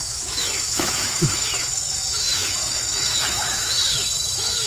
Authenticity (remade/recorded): remade